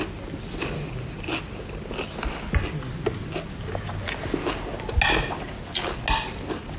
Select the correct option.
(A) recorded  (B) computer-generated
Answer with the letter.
A